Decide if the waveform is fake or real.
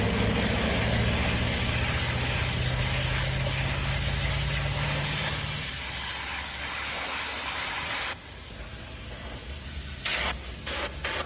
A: real